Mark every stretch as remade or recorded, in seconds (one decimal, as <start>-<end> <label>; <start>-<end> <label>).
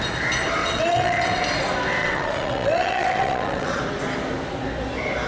0.0-0.6 recorded; 0.6-1.4 remade; 1.4-2.0 recorded; 2.0-3.8 remade; 3.8-5.3 recorded